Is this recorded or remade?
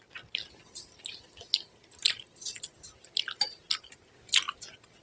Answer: recorded